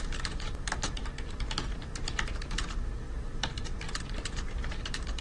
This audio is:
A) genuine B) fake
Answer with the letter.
B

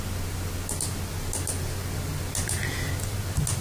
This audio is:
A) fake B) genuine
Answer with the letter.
B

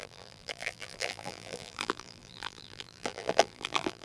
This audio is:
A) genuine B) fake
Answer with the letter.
B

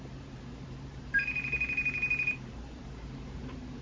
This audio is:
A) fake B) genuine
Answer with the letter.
A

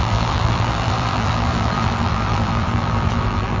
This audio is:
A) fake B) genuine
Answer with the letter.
A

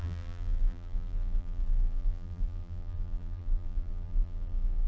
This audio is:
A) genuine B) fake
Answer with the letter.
B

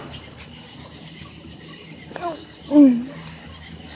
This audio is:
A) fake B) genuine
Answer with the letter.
B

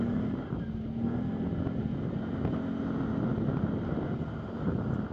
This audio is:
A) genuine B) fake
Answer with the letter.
A